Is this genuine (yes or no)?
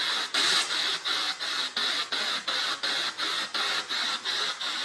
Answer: no